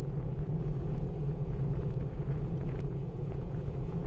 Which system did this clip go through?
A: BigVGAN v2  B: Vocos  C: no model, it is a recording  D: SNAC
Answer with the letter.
B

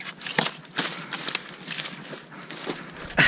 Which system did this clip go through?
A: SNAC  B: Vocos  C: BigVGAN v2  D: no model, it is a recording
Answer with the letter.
D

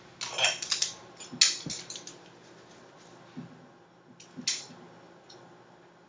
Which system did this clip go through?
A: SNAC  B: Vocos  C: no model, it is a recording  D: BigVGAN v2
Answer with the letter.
C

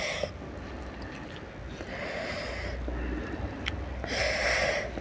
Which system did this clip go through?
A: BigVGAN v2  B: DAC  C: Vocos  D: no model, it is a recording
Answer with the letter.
D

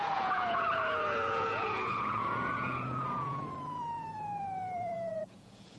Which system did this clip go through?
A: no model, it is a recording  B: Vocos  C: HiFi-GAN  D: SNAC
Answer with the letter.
B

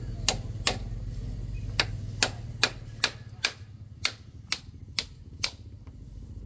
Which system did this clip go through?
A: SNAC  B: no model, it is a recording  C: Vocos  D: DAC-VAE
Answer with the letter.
B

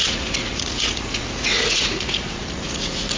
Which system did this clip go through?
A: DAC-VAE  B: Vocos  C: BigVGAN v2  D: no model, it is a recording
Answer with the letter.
B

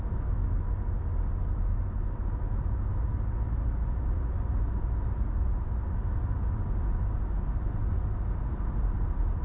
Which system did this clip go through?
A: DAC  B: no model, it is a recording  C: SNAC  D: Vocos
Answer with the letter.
B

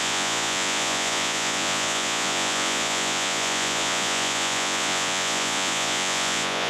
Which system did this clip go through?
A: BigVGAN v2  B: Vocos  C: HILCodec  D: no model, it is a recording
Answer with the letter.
B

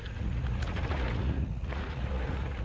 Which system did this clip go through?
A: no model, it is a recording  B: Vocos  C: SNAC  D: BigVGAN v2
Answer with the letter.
B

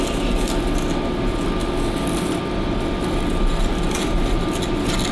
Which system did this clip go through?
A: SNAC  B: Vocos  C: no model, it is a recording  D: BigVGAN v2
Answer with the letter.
C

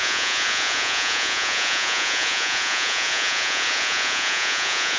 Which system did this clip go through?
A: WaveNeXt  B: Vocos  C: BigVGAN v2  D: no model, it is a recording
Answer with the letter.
B